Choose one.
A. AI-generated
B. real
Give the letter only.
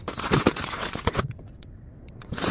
A